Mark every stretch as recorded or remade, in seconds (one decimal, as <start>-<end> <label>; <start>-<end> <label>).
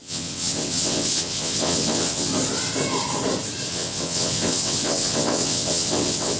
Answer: 0.0-2.3 remade; 2.3-3.7 recorded; 3.7-6.4 remade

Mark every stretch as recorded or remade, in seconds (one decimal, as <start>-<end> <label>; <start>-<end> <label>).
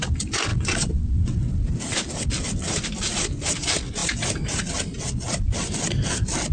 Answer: 0.0-0.5 recorded; 0.5-1.5 remade; 1.5-6.5 recorded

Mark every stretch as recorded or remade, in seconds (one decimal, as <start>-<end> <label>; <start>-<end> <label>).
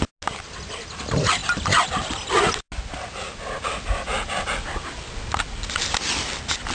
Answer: 0.0-6.7 recorded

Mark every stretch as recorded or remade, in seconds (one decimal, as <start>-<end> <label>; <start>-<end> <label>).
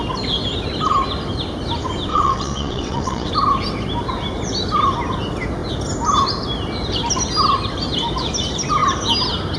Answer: 0.0-2.1 recorded; 2.1-3.3 remade; 3.3-9.6 recorded